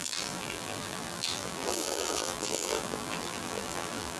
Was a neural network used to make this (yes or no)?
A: yes